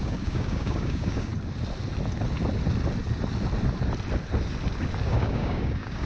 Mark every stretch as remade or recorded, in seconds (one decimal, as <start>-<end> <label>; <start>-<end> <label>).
0.0-1.3 remade; 1.3-5.0 recorded; 5.0-6.1 remade

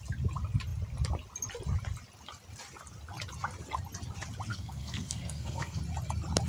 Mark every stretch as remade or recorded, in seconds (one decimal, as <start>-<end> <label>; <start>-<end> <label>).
0.0-4.5 recorded; 4.5-5.8 remade; 5.8-6.5 recorded

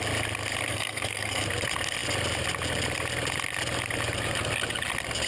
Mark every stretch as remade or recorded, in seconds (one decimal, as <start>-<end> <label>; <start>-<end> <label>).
0.0-0.7 recorded; 0.7-1.4 remade; 1.4-5.3 recorded

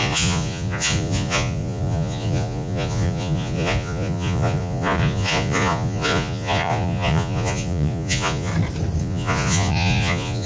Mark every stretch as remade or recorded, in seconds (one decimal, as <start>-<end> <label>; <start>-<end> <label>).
0.0-8.5 remade; 8.5-9.0 recorded; 9.0-10.5 remade

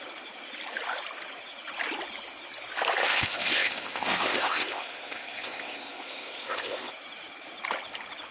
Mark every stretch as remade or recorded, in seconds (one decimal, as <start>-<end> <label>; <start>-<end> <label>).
0.0-3.0 recorded; 3.0-6.9 remade; 6.9-8.3 recorded